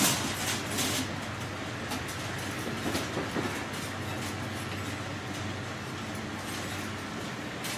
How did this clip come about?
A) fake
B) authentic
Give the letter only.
B